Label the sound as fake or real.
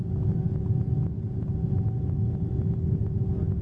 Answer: real